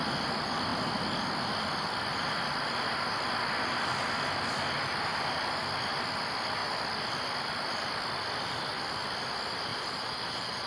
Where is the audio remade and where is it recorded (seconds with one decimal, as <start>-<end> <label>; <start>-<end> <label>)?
0.0-9.7 recorded; 9.7-10.7 remade